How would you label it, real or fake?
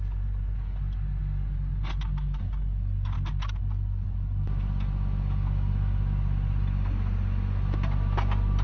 real